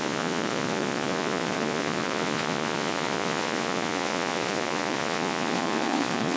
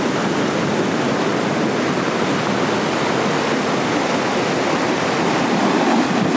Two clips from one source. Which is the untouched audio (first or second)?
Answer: second